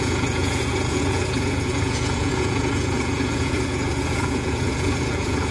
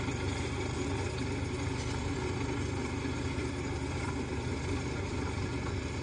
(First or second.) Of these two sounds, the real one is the second